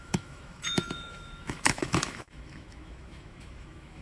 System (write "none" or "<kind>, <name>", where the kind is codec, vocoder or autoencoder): autoencoder, DAC-VAE